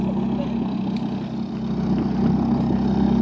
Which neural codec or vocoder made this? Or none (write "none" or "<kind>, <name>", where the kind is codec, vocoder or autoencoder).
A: none